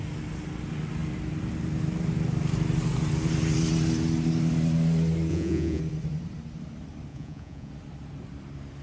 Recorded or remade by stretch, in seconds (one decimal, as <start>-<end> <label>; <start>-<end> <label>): 0.0-5.3 recorded; 5.3-5.8 remade; 5.8-7.1 recorded; 7.1-7.7 remade; 7.7-8.8 recorded